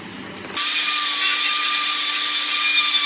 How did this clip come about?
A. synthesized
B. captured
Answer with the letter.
B